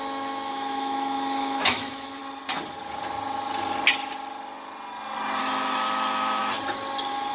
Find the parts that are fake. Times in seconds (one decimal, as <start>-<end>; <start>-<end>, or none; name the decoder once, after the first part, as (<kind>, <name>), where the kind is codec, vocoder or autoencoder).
0.0-2.2 (autoencoder, DAC-VAE); 5.4-6.4